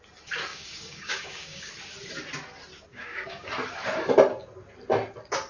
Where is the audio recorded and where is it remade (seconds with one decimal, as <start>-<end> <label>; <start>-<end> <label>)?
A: 0.0-0.5 recorded; 0.5-1.7 remade; 1.7-2.9 recorded; 2.9-3.5 remade; 3.5-5.5 recorded